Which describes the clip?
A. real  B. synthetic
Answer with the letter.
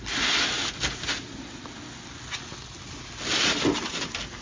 A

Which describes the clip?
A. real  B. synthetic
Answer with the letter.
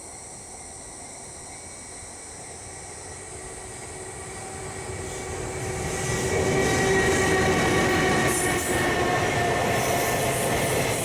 A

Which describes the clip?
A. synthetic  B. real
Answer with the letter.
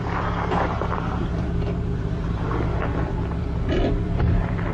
A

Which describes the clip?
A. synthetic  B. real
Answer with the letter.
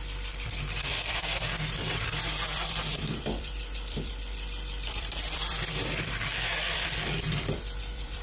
A